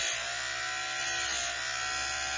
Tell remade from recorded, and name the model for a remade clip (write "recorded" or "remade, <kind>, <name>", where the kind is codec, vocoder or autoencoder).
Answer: recorded